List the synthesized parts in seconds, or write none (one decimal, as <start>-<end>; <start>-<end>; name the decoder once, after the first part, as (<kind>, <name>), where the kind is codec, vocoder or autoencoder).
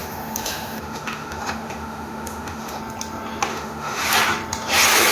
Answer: 0.0-2.8 (autoencoder, DAC-VAE); 3.5-4.1